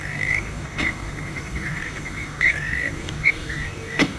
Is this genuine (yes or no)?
no